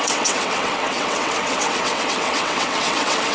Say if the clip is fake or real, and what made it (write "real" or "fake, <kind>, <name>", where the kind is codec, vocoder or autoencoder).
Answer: fake, vocoder, WaveNeXt